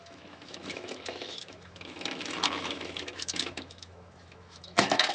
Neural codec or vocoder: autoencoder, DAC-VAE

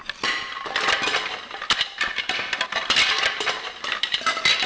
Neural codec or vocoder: none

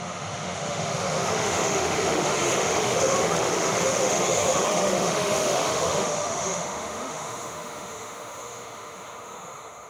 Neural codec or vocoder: autoencoder, DAC-VAE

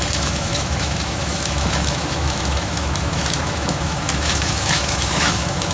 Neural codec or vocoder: autoencoder, DAC-VAE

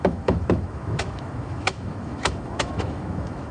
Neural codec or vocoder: autoencoder, DAC-VAE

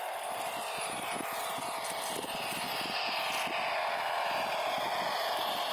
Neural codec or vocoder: none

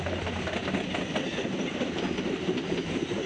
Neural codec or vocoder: none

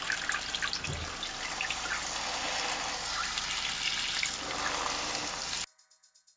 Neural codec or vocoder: none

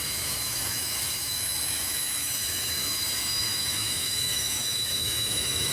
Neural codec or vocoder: autoencoder, DAC-VAE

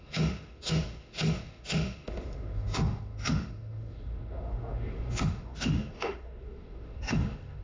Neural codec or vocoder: autoencoder, DAC-VAE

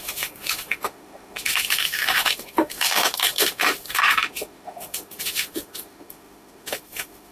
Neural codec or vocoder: autoencoder, DAC-VAE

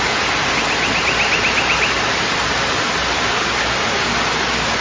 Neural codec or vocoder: none